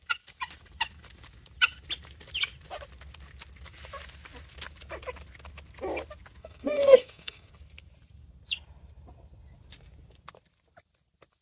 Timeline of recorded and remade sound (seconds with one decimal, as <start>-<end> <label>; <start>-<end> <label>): 0.0-6.4 recorded; 6.4-7.5 remade; 7.5-11.4 recorded